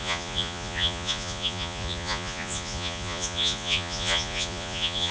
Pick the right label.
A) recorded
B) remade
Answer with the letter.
B